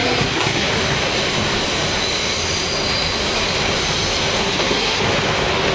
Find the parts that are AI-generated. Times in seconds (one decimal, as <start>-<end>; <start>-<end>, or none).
0.0-0.7; 4.4-5.0